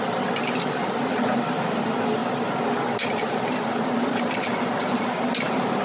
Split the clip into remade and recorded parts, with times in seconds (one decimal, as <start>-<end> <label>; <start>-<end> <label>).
0.0-2.2 recorded; 2.2-5.8 remade